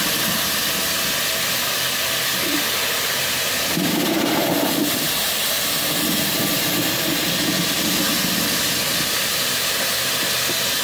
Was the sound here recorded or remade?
remade